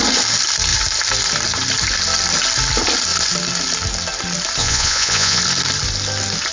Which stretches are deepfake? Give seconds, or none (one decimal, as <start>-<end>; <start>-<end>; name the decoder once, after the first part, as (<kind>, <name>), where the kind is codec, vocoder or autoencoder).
4.6-5.4 (vocoder, Vocos)